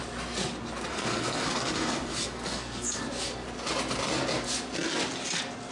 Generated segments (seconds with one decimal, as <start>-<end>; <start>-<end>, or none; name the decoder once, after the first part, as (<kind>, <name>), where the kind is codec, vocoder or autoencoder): 0.9-3.0 (codec, SNAC)